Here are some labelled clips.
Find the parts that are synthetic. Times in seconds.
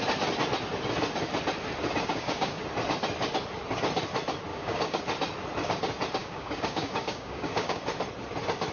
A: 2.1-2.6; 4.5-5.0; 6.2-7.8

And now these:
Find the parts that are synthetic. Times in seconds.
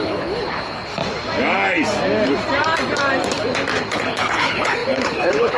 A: 0.0-1.0; 3.9-5.6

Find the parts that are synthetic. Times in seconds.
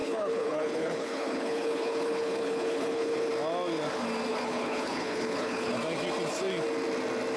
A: 0.0-3.3; 4.3-5.7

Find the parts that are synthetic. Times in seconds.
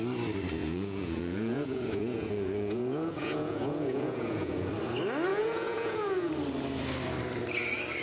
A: 0.6-4.7; 5.3-6.3